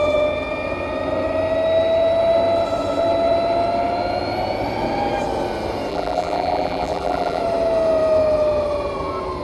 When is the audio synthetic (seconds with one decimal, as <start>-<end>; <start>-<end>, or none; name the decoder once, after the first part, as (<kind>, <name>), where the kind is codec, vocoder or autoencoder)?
5.9-7.4 (vocoder, BigVGAN v2)